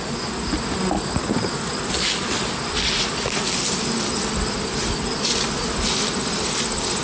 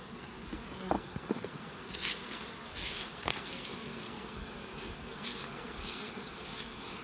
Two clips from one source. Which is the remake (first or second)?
second